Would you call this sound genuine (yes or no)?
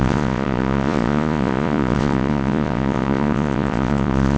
no